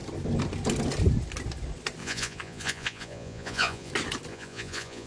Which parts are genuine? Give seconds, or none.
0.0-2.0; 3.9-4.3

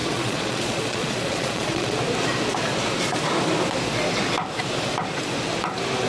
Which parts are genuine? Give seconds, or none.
2.0-6.1